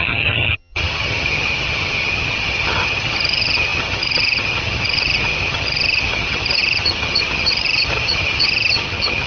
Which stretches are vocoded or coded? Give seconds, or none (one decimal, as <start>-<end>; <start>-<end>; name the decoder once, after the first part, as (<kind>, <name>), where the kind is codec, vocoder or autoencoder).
0.0-9.3 (vocoder, HiFi-GAN)